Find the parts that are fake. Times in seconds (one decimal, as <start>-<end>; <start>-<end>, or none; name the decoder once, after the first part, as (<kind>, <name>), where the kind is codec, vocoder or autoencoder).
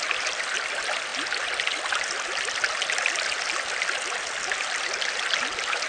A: none